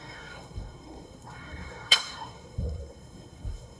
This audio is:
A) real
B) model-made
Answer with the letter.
B